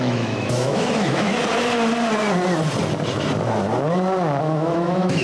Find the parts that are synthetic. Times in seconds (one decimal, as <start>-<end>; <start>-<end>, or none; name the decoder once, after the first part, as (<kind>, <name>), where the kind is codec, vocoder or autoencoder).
0.0-1.3 (autoencoder, DAC-VAE); 4.4-5.2